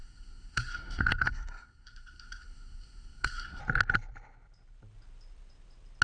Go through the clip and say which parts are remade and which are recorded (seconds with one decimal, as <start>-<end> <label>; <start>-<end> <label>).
0.0-3.6 remade; 3.6-6.0 recorded